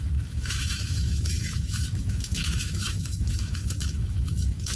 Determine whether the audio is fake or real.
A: fake